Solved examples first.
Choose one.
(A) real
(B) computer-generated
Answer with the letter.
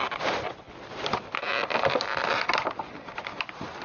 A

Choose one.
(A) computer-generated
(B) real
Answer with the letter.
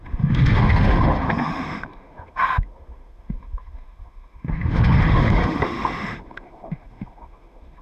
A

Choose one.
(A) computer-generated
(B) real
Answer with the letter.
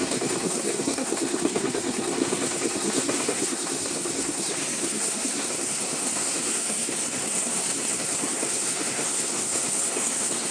A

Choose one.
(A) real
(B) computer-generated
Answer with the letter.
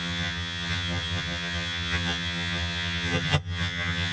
B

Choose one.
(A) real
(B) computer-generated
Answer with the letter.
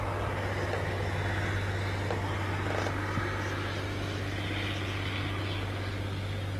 A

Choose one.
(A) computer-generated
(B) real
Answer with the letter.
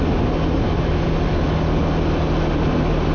B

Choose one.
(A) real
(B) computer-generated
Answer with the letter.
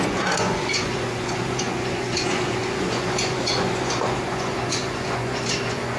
B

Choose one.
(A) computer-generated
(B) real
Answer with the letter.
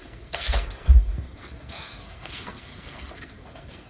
A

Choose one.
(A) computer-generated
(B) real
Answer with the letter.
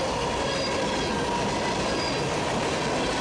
B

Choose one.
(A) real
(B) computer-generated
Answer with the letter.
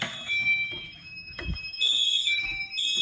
B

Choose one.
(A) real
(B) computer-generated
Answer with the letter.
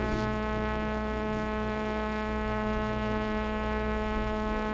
B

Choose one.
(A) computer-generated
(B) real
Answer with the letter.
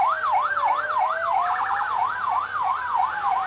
B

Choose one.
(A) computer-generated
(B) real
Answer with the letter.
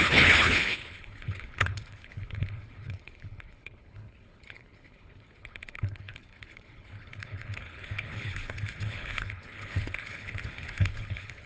A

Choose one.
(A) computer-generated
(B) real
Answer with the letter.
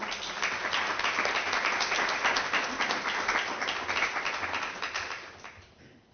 B